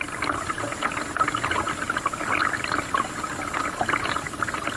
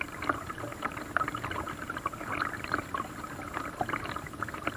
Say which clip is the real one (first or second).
first